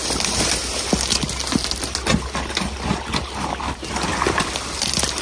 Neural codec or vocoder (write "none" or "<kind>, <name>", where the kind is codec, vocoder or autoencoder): none